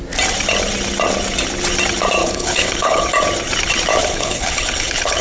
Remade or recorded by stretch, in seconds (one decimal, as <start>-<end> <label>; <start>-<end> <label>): 0.0-2.2 recorded; 2.2-3.1 remade; 3.1-4.0 recorded; 4.0-5.2 remade